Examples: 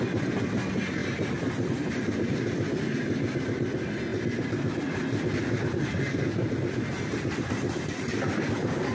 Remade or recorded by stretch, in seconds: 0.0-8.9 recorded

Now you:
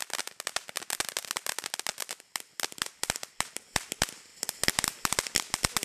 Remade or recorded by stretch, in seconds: 0.0-5.8 recorded

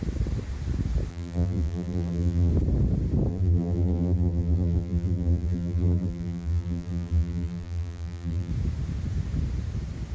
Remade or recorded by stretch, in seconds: 0.0-1.1 recorded; 1.1-2.5 remade; 2.5-3.3 recorded; 3.3-8.5 remade; 8.5-10.1 recorded

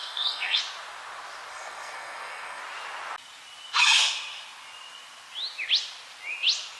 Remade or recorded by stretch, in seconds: 0.0-0.6 remade; 0.6-1.5 recorded; 1.5-2.6 remade; 2.6-6.8 recorded

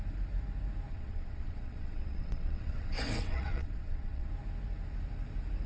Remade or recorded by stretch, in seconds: 0.0-0.9 recorded; 0.9-4.3 remade; 4.3-5.7 recorded

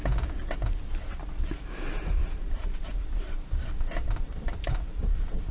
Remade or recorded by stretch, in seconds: 0.0-0.9 remade; 0.9-2.2 recorded; 2.2-5.5 remade

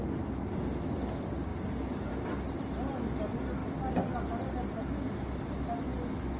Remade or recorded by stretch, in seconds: 0.0-6.4 recorded